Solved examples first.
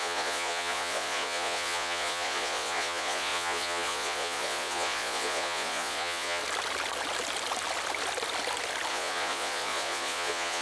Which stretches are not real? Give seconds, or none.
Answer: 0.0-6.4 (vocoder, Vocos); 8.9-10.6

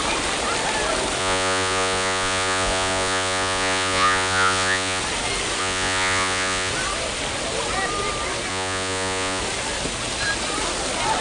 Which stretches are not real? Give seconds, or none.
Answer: 1.2-5.0 (vocoder, Vocos); 5.6-6.7; 8.5-9.4

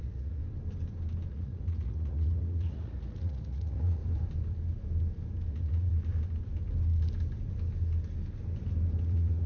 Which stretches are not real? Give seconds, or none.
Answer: 0.0-0.4 (vocoder, Vocos); 1.3-4.0; 5.5-5.9; 9.0-9.5

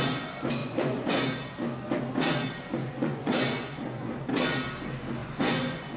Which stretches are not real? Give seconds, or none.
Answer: 0.6-1.2 (vocoder, Vocos); 2.8-4.2; 5.2-6.0